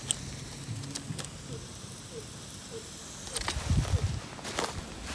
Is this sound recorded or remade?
recorded